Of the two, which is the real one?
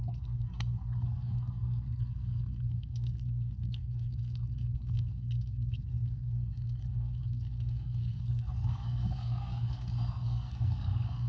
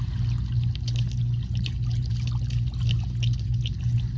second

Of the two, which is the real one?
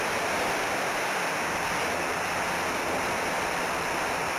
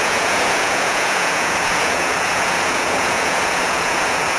first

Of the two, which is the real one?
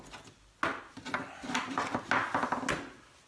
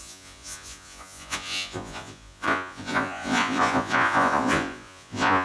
first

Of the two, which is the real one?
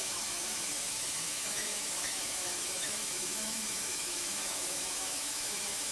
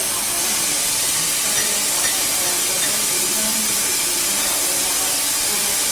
second